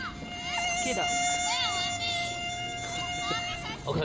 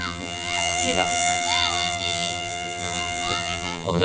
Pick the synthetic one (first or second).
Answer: second